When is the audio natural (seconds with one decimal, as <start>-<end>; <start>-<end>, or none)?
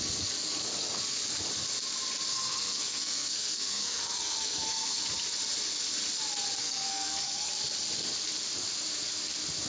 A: 0.0-2.3; 5.0-6.6; 7.5-9.7